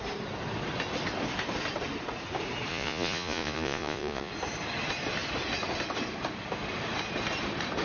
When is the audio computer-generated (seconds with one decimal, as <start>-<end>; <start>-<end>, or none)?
2.7-4.3